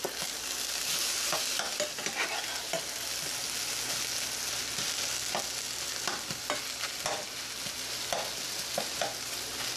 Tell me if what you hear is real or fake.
real